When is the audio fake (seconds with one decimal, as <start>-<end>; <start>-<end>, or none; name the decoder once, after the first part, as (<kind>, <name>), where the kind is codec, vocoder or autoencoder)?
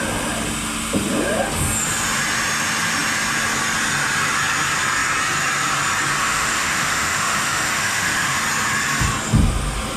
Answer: 6.2-8.4 (autoencoder, DAC-VAE)